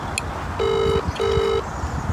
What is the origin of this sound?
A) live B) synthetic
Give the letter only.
A